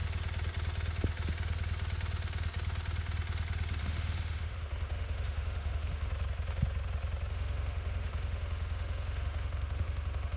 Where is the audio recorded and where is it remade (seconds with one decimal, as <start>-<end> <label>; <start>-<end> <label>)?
0.0-3.8 recorded; 3.8-6.1 remade; 6.1-7.3 recorded; 7.3-10.4 remade